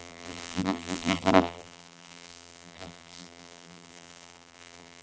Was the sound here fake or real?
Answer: fake